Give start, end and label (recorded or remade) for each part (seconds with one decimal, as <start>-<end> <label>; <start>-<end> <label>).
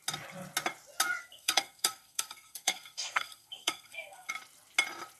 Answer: 0.0-1.2 recorded; 1.2-4.3 remade; 4.3-5.2 recorded